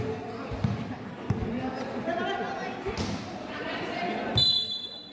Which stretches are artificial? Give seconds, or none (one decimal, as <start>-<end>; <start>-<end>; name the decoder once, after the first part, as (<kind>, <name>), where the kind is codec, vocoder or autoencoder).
none